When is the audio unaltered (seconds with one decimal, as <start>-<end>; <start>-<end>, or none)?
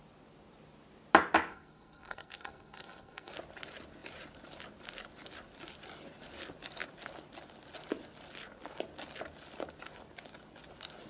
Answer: 0.0-1.5; 3.3-11.1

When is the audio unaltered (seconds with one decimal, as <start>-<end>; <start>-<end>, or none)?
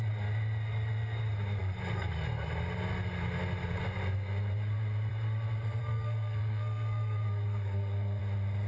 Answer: 0.0-5.8; 8.2-8.7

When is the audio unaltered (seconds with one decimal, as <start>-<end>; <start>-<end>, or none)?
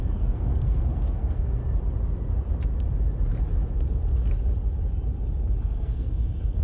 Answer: 1.6-5.6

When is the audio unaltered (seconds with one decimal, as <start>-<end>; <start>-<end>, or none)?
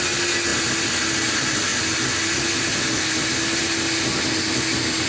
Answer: 0.0-5.1